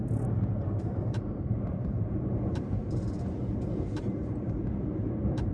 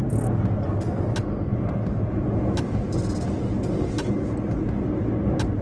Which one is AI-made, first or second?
first